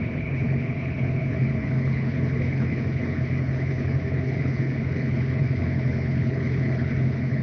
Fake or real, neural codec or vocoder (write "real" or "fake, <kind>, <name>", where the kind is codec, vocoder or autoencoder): fake, codec, HILCodec